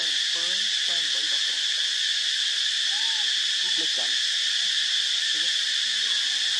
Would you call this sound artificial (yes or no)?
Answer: no